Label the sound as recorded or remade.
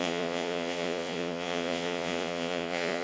remade